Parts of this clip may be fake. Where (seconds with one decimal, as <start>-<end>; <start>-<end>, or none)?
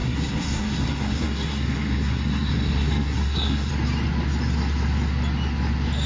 0.0-3.7